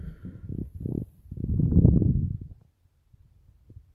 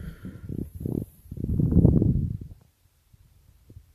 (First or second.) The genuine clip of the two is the first